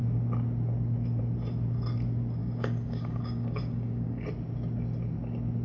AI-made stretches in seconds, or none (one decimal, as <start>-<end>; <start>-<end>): 2.4-4.3